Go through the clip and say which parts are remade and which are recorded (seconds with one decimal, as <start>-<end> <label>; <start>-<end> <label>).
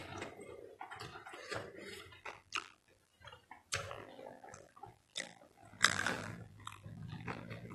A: 0.0-2.2 recorded; 2.2-3.1 remade; 3.1-3.9 recorded; 3.9-7.7 remade